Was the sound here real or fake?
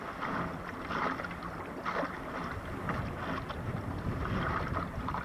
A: real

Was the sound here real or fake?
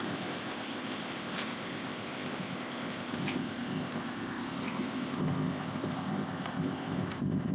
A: fake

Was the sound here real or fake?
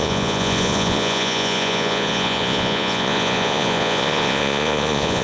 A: fake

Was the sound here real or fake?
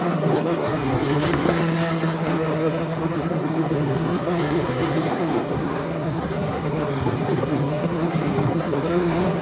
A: fake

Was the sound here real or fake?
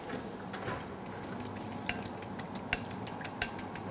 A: real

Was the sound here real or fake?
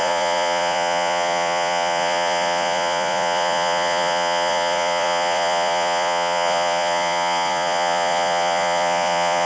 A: fake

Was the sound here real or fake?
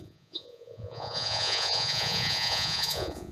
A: fake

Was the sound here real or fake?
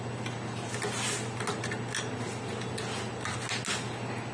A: real